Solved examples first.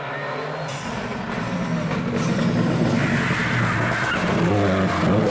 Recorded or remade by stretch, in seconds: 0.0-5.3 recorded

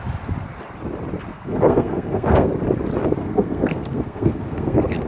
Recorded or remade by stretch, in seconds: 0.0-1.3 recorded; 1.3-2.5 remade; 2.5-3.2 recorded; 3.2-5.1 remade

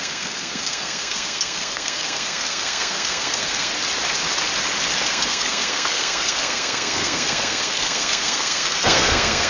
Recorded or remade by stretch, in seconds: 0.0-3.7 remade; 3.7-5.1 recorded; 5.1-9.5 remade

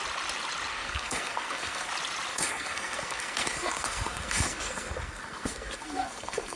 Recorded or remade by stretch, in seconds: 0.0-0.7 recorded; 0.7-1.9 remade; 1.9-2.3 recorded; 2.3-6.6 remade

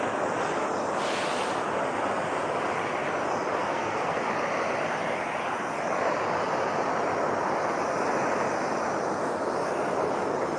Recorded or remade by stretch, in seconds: 0.0-3.6 recorded; 3.6-4.3 remade; 4.3-10.6 recorded

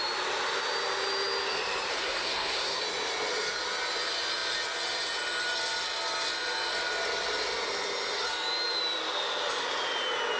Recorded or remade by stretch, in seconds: 0.0-1.9 recorded; 1.9-2.8 remade; 2.8-10.4 recorded

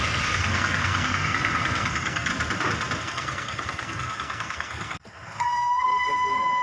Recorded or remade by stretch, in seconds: 0.0-2.3 remade; 2.3-3.0 recorded; 3.0-6.6 remade

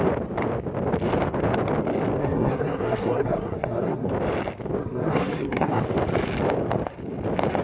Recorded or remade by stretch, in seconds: 0.0-2.2 recorded; 2.2-4.1 remade; 4.1-4.8 recorded; 4.8-5.8 remade; 5.8-7.6 recorded